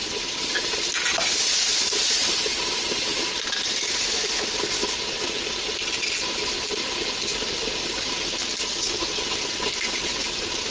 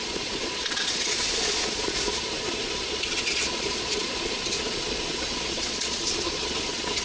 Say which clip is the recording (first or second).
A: first